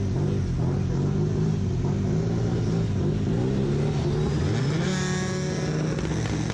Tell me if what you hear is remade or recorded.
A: recorded